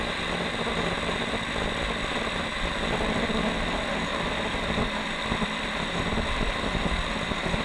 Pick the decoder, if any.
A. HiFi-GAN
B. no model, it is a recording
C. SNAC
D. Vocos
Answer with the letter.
B